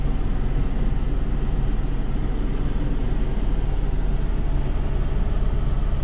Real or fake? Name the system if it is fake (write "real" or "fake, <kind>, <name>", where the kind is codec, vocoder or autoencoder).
real